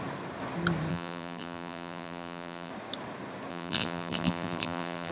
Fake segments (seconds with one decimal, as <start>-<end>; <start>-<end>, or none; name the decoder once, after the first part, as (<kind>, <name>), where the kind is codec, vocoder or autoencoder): 0.9-2.7 (vocoder, BigVGAN v2); 3.5-5.1